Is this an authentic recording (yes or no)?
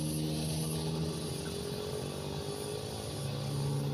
yes